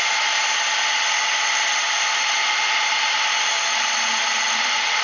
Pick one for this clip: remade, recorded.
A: recorded